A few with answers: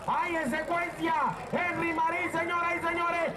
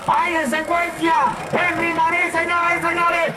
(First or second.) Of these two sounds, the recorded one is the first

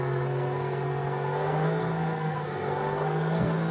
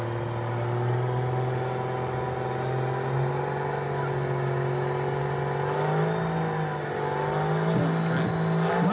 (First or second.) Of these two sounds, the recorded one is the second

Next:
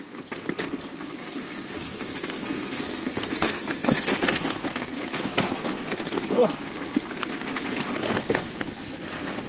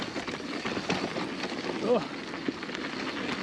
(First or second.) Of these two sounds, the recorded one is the second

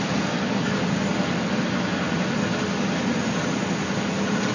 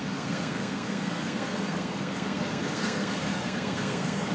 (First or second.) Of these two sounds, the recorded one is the first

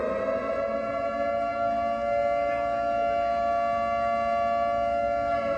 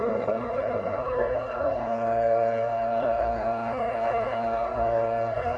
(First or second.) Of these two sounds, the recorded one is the first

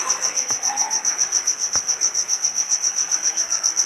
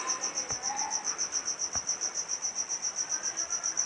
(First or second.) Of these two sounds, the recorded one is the second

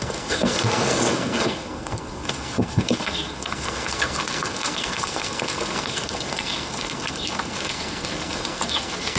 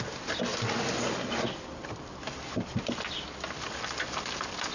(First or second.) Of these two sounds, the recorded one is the second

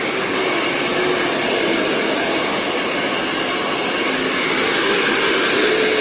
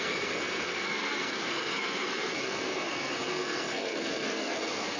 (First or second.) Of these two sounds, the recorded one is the first